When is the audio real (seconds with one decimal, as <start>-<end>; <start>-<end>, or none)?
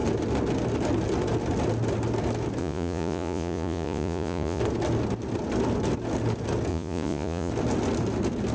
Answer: 0.0-2.6; 4.6-6.7; 7.5-8.5